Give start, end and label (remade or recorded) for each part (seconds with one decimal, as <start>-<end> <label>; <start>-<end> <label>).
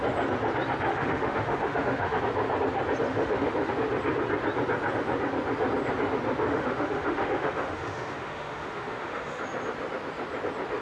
0.0-0.9 recorded; 0.9-2.2 remade; 2.2-3.1 recorded; 3.1-3.7 remade; 3.7-6.5 recorded; 6.5-9.4 remade; 9.4-10.8 recorded